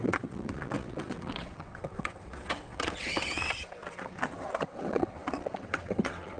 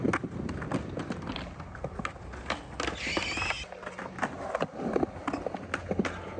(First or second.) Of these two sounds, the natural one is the second